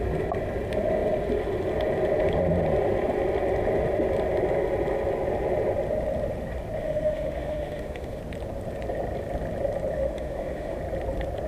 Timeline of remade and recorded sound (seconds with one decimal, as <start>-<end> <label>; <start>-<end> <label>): 0.0-6.8 recorded; 6.8-8.2 remade; 8.2-9.9 recorded; 9.9-10.8 remade; 10.8-11.5 recorded